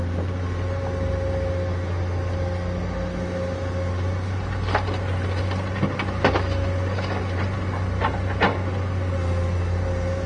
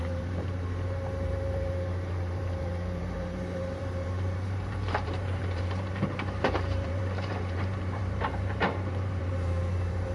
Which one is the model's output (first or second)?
second